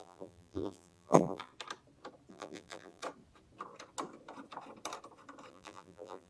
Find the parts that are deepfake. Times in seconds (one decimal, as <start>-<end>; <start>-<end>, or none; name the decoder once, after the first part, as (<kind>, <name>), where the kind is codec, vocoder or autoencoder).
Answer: 0.0-1.5 (vocoder, BigVGAN v2); 2.3-3.0; 5.5-6.3